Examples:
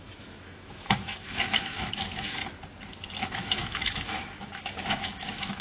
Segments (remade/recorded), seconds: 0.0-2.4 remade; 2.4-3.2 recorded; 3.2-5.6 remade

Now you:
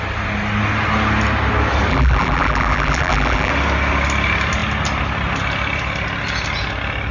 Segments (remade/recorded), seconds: 0.0-1.9 recorded; 1.9-3.5 remade; 3.5-7.1 recorded

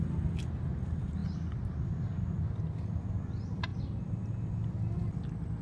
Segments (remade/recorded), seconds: 0.0-5.6 recorded